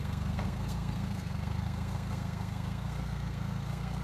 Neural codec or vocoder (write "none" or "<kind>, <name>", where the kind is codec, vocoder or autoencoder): codec, SNAC